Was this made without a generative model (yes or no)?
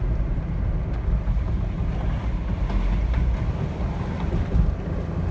yes